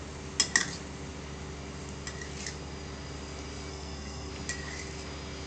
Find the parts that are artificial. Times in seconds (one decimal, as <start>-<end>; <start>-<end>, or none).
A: 3.7-4.3